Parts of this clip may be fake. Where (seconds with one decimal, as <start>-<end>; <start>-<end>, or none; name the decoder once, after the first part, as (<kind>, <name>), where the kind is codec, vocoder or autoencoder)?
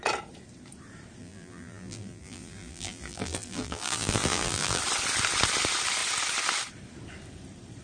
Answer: 1.2-4.8 (vocoder, BigVGAN v2)